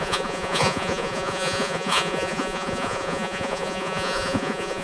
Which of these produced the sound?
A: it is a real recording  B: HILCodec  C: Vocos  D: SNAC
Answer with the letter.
C